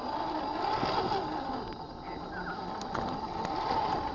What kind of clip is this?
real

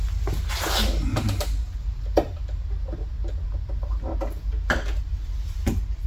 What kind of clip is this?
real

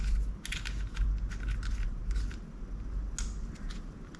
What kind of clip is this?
real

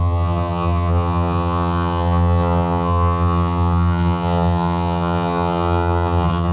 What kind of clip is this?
fake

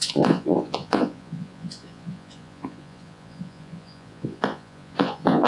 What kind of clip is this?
fake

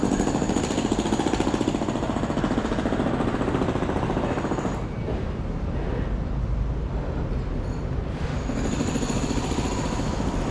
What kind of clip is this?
real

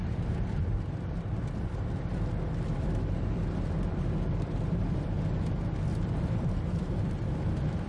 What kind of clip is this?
fake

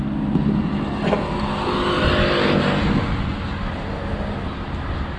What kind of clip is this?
real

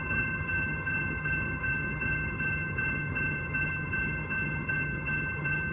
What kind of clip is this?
fake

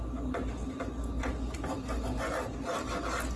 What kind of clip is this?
real